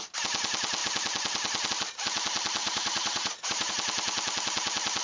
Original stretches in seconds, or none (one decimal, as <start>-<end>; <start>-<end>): 0.0-2.6; 3.7-5.0